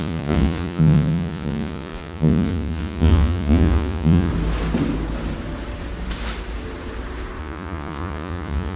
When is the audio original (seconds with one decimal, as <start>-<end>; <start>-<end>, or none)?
4.3-7.4